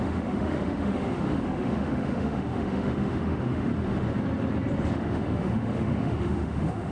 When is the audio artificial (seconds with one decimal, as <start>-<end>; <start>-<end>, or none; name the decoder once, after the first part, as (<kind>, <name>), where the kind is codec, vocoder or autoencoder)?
0.0-3.7 (autoencoder, DAC-VAE); 4.9-6.9